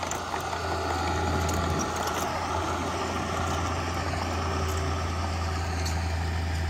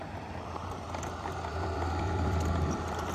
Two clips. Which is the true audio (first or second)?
first